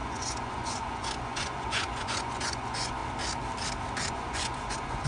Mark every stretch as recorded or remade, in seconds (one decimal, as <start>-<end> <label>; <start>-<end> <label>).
0.0-3.0 remade; 3.0-4.1 recorded; 4.1-5.1 remade